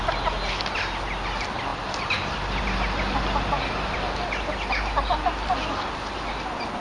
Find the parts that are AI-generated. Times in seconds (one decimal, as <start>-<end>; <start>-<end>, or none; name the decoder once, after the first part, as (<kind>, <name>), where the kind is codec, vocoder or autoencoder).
none